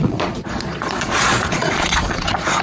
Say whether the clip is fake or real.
fake